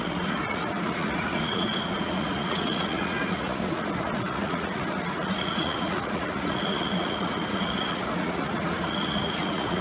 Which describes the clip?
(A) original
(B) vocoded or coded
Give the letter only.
B